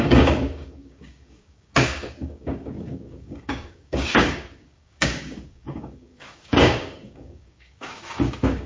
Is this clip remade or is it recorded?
remade